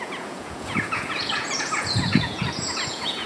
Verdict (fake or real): fake